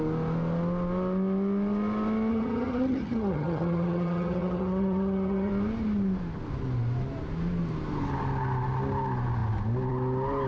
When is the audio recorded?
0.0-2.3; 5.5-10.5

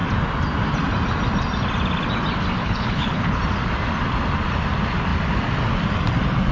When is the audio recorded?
0.0-2.6; 3.4-6.5

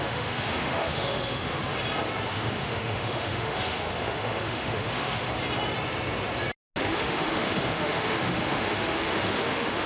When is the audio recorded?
1.6-2.3; 5.3-6.8

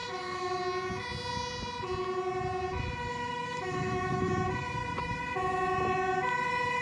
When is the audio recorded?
0.6-3.1; 4.3-6.8

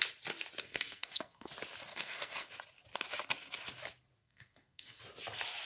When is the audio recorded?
0.0-0.6; 1.5-1.9; 2.5-4.2; 5.0-5.6

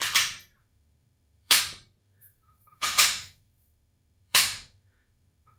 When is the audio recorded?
0.0-0.6; 1.6-2.0

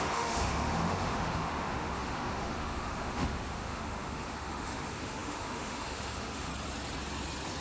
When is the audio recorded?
6.5-7.6